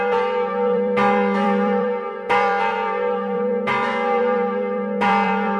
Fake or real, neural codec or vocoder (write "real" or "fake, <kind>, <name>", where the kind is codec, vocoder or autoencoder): fake, vocoder, BigVGAN v2